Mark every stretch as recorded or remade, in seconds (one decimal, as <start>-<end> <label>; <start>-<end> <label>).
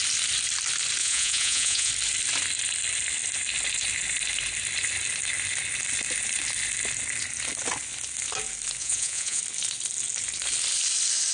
0.0-1.0 recorded; 1.0-1.9 remade; 1.9-8.8 recorded; 8.8-9.4 remade; 9.4-11.3 recorded